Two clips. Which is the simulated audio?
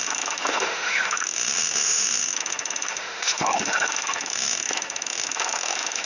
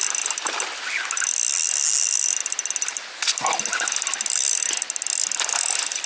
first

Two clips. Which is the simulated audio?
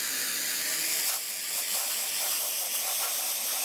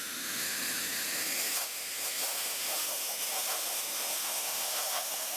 second